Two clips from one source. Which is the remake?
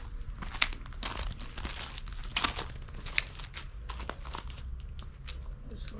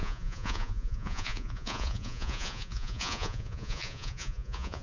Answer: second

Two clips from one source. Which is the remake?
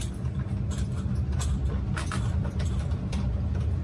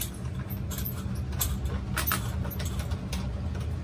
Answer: first